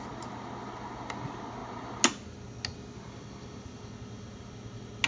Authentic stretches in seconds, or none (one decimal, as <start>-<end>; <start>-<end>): 0.0-5.1